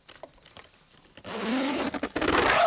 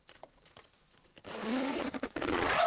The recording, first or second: first